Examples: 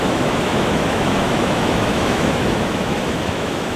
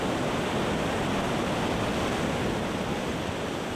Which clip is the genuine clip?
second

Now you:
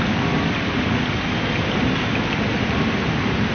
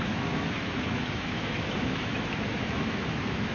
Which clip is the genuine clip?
first